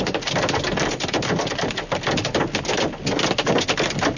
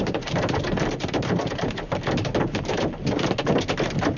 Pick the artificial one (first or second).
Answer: second